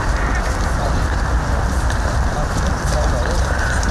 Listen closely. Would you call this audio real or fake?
real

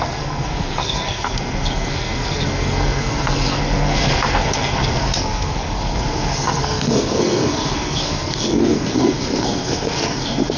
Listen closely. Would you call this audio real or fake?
fake